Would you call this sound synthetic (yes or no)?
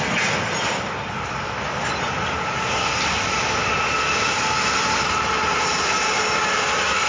no